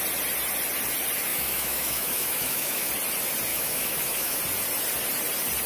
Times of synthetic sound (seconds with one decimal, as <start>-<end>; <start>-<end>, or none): 1.3-2.9; 3.5-4.4